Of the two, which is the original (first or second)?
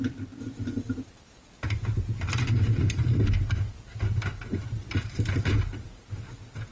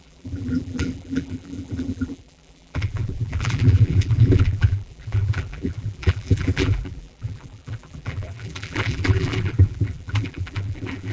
first